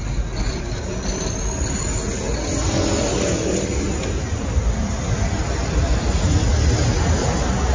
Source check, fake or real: real